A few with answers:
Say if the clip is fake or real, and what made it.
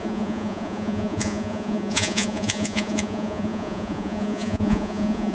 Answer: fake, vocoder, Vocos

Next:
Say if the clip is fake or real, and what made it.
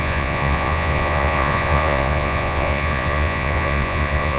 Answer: fake, vocoder, Vocos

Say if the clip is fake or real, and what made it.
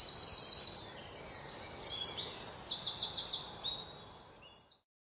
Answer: real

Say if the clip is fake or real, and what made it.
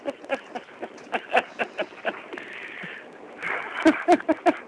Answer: real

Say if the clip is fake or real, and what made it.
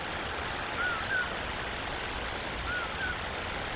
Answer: real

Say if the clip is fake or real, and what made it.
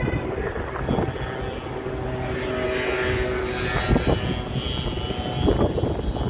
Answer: real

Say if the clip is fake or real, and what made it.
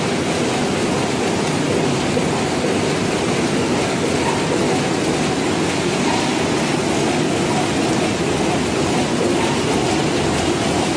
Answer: real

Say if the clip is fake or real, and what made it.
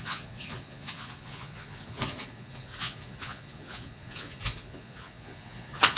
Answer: fake, vocoder, Vocos